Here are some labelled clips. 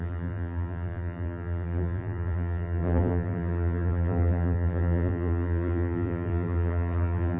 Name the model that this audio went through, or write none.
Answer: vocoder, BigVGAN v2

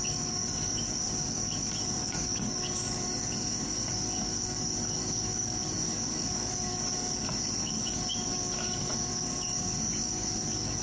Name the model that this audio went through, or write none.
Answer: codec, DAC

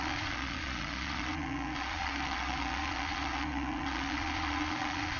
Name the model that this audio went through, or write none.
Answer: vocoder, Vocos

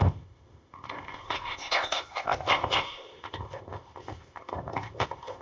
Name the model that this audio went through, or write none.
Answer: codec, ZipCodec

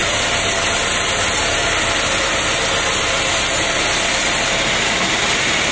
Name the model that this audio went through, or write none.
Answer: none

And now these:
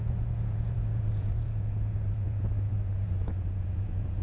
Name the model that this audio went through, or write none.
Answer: vocoder, Vocos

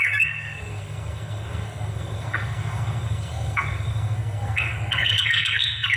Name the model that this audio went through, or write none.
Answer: codec, SNAC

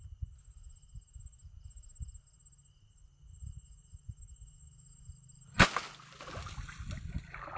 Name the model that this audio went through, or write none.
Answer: none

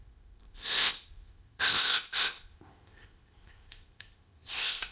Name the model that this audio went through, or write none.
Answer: codec, ZipCodec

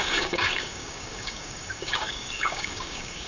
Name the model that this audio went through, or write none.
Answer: codec, DAC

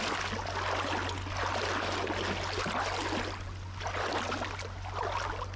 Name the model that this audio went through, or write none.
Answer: none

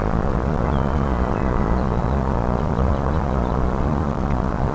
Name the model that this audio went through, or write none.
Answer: vocoder, Vocos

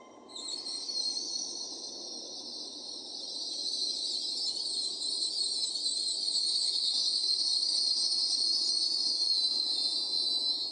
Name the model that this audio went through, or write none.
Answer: none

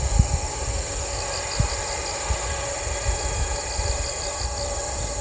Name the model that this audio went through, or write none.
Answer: none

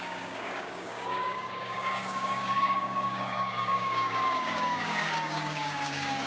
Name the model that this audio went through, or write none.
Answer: codec, DAC